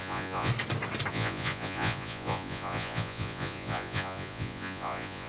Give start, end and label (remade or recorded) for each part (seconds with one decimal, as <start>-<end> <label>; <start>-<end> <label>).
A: 0.0-0.5 remade; 0.5-1.1 recorded; 1.1-5.3 remade